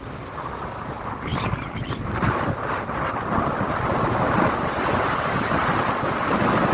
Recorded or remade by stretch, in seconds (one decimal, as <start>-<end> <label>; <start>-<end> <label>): 0.0-6.7 recorded